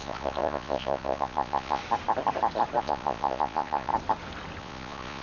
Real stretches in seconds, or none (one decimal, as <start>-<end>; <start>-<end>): 1.8-2.8; 3.9-4.6